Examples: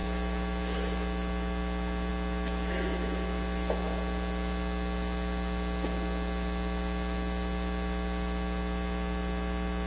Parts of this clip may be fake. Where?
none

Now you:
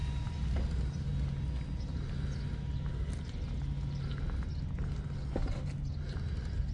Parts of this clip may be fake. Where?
none

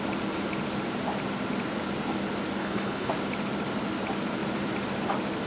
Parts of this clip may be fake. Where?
2.6-3.1

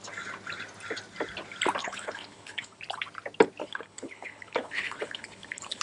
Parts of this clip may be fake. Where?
1.8-2.8; 3.6-5.8

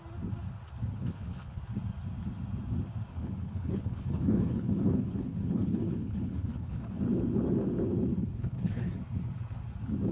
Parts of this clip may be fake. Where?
0.9-1.6; 3.1-7.0; 8.2-8.9

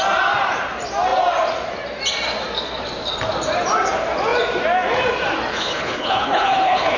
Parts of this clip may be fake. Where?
5.5-7.0